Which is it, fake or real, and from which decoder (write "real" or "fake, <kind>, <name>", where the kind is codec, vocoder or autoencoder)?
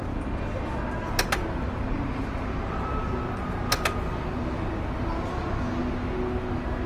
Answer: real